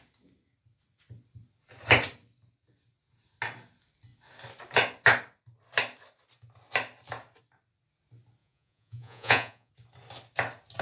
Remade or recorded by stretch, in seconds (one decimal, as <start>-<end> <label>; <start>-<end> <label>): 0.0-8.4 recorded; 8.4-9.7 remade; 9.7-10.8 recorded